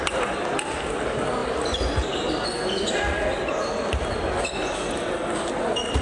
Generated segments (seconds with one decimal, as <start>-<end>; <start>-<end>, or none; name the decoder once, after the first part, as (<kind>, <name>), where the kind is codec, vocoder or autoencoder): none